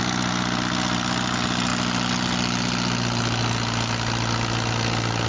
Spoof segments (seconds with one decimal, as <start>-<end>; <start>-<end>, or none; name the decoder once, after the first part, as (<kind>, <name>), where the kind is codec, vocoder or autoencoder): none